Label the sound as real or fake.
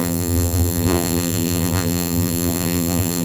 fake